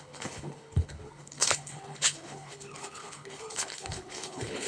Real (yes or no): no